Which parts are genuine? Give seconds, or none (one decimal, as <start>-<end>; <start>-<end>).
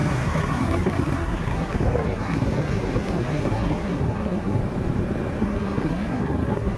4.6-5.4